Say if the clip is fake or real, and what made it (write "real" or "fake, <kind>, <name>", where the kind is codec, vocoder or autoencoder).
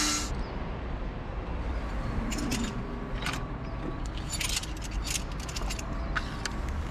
real